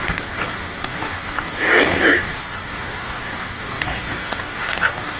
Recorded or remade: remade